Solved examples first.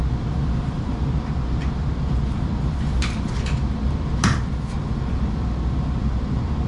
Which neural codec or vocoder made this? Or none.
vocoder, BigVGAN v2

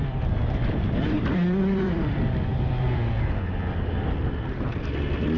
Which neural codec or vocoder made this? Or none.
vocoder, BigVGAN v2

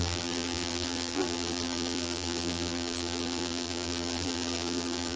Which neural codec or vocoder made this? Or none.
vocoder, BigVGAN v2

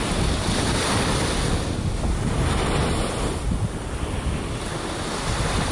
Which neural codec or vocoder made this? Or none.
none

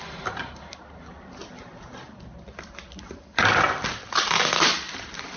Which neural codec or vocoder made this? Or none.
vocoder, BigVGAN v2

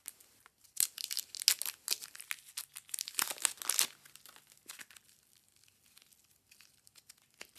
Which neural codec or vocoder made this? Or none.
none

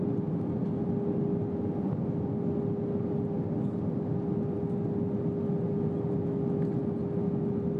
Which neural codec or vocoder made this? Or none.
none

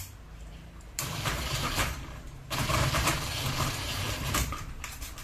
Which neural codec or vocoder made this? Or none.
vocoder, BigVGAN v2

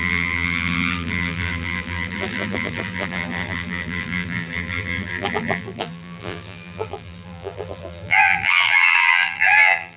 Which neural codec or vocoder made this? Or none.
vocoder, BigVGAN v2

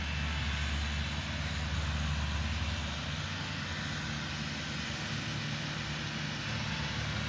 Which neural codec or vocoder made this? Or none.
none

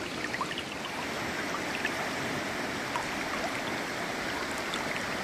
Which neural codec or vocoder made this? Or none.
none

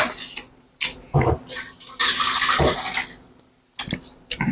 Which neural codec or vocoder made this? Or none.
none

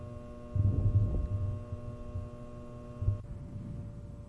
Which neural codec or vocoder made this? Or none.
none